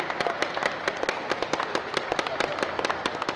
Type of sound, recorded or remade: recorded